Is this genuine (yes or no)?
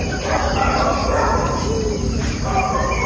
yes